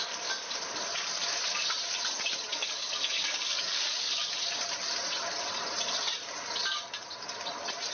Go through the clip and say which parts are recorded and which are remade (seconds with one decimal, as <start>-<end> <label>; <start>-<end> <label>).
0.0-2.5 recorded; 2.5-4.3 remade; 4.3-7.9 recorded